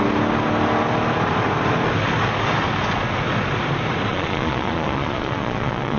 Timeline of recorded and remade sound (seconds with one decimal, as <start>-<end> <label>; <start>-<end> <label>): 0.0-4.1 recorded; 4.1-6.0 remade